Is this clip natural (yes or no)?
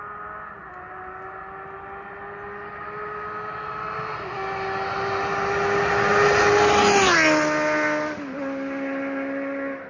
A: yes